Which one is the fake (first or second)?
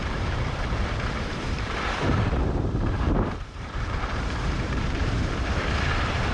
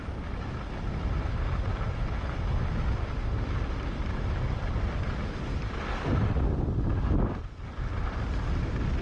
first